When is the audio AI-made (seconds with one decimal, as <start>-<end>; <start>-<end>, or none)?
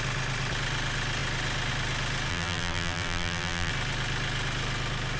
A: 2.3-3.7